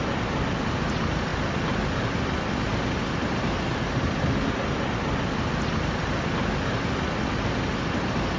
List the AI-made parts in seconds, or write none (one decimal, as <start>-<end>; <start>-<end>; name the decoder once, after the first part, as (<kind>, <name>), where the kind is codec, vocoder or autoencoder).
1.3-2.6 (vocoder, BigVGAN v2)